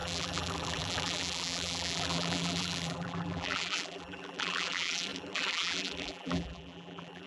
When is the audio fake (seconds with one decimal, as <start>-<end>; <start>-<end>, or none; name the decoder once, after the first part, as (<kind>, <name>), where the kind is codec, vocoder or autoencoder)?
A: 0.0-7.3 (vocoder, BigVGAN v2)